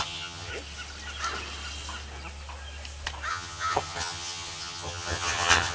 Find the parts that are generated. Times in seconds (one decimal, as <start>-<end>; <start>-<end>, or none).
0.0-0.5; 3.3-5.7